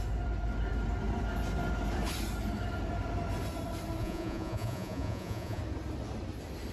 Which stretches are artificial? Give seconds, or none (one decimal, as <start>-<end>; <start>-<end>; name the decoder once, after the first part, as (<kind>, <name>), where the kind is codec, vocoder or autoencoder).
4.0-5.6 (vocoder, Vocos)

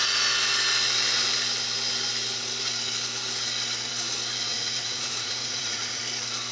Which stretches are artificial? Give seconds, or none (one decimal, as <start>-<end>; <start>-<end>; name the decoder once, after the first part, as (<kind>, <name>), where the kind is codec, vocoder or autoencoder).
4.5-6.0 (vocoder, Vocos)

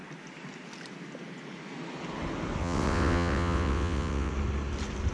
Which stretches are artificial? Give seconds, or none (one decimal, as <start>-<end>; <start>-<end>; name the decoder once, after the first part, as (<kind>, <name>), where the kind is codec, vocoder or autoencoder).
2.6-4.3 (vocoder, WaveNeXt)

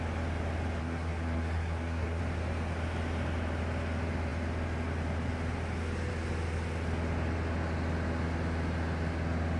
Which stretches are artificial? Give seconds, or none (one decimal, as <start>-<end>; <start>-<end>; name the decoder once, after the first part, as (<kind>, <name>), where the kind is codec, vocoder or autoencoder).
0.8-2.2 (codec, SNAC)

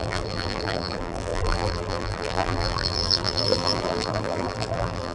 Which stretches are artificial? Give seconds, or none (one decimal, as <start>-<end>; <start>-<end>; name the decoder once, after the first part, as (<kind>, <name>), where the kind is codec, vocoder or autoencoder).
0.0-5.1 (vocoder, BigVGAN v2)

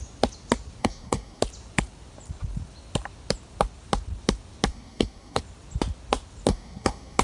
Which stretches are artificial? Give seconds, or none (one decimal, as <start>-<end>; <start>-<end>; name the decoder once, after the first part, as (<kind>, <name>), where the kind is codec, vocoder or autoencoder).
0.8-1.4 (codec, SNAC); 4.7-5.4; 6.5-7.2

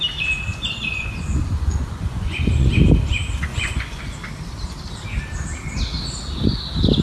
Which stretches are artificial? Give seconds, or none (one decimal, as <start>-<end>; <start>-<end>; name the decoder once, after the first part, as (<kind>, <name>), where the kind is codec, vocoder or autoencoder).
0.5-2.7 (vocoder, Vocos); 3.5-4.0

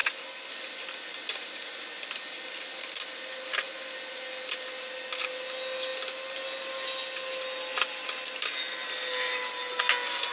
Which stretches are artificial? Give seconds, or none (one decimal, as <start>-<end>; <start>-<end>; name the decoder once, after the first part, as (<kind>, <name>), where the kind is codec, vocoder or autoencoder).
none